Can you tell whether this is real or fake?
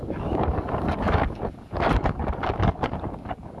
fake